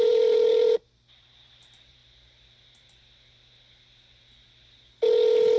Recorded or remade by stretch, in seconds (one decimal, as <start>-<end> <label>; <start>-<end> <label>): 0.0-2.0 remade; 2.0-5.6 recorded